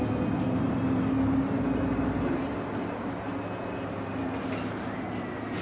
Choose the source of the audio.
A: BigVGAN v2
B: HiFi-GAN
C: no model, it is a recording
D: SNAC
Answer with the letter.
C